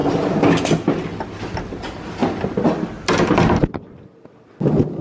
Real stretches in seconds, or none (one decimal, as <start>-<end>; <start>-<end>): 0.0-5.0